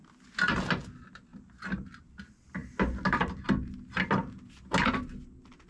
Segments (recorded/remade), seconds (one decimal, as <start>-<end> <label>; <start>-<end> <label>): 0.0-5.7 recorded